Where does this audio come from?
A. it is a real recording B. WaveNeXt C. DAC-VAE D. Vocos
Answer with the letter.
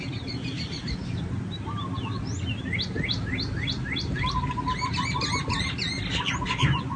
A